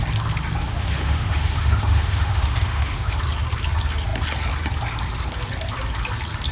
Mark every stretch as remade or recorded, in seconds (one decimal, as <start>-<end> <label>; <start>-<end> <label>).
0.0-0.6 recorded; 0.6-3.2 remade; 3.2-6.5 recorded